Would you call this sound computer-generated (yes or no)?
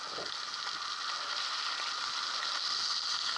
no